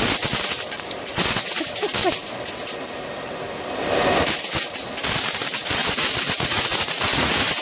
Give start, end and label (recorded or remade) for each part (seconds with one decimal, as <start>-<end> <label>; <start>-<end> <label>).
0.0-5.8 recorded; 5.8-7.6 remade